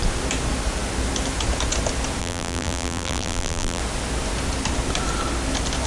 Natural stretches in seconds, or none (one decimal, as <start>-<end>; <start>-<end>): 0.0-2.2; 3.8-5.9